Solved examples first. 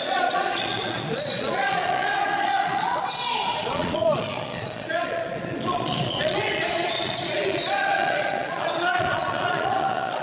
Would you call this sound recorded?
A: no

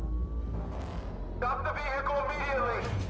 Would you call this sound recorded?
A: yes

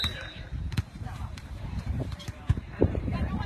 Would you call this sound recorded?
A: no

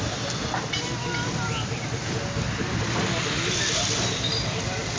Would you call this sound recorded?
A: yes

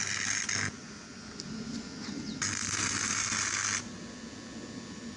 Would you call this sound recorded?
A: yes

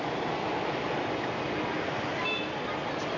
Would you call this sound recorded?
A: yes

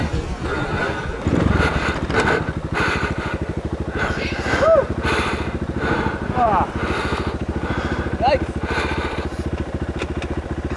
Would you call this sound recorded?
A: yes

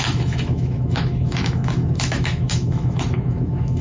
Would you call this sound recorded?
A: no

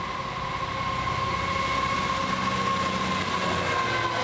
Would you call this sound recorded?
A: yes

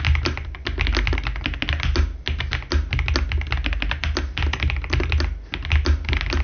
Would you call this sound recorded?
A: yes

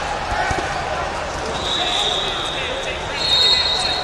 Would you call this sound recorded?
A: yes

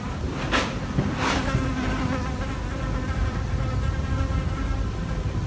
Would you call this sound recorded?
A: yes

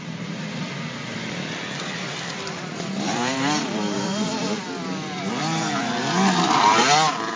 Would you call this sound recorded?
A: no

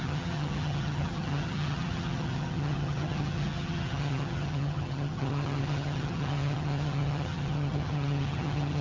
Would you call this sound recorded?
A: no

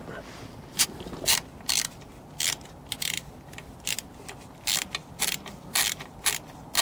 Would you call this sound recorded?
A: yes